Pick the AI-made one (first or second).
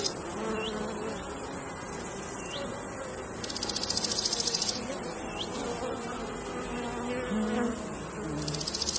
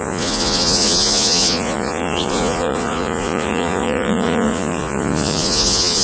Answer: second